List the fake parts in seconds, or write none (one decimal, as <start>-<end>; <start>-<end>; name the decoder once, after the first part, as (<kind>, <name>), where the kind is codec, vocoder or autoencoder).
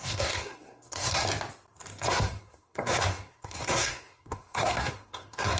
0.0-1.2 (codec, SNAC); 2.1-5.6